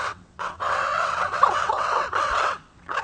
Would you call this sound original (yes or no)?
no